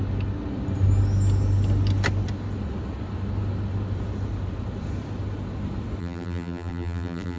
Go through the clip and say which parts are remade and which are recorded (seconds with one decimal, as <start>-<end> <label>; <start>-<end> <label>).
0.0-6.0 recorded; 6.0-7.4 remade